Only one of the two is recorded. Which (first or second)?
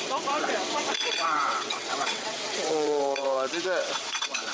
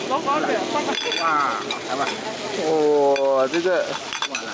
second